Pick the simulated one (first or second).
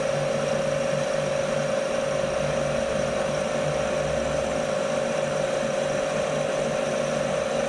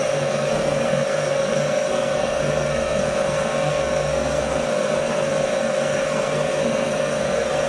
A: second